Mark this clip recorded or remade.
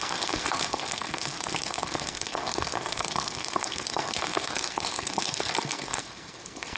remade